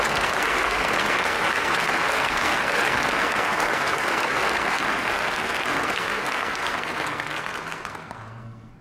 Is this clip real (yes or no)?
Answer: no